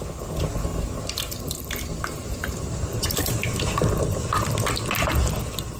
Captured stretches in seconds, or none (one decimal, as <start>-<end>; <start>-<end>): 0.0-0.7; 4.2-5.8